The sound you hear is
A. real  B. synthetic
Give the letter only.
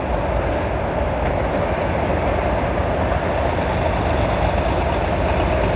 A